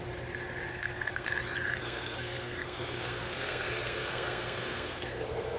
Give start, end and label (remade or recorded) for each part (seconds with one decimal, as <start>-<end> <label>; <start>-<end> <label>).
0.0-0.7 recorded; 0.7-1.3 remade; 1.3-1.8 recorded; 1.8-5.6 remade